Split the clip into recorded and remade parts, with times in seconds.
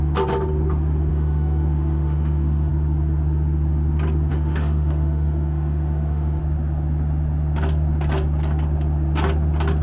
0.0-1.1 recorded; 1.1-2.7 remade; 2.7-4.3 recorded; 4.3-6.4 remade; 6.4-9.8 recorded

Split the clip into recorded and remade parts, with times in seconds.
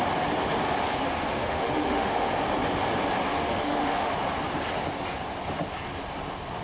0.0-1.3 recorded; 1.3-2.3 remade; 2.3-3.3 recorded; 3.3-4.1 remade; 4.1-6.6 recorded